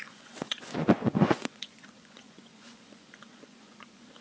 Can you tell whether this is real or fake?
fake